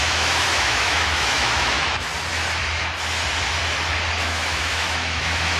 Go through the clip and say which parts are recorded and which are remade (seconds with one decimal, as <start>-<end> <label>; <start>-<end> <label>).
0.0-2.1 remade; 2.1-4.2 recorded; 4.2-5.6 remade